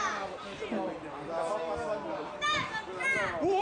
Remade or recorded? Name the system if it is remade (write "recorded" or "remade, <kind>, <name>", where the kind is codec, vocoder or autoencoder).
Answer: recorded